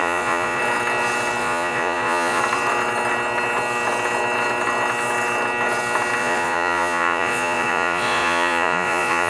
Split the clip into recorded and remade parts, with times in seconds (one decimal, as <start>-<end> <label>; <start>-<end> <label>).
0.0-0.6 remade; 0.6-1.4 recorded; 1.4-2.4 remade; 2.4-6.2 recorded; 6.2-9.3 remade